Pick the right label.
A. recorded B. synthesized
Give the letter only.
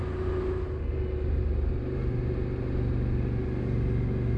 A